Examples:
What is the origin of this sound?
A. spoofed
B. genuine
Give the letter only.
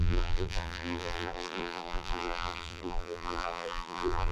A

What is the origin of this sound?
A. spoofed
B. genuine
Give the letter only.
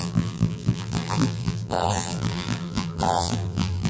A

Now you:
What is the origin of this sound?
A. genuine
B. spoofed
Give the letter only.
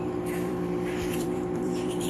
B